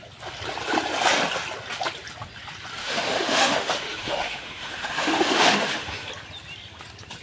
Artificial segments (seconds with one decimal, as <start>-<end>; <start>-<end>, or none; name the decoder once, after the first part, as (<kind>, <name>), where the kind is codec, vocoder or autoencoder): 2.8-6.1 (autoencoder, DAC-VAE)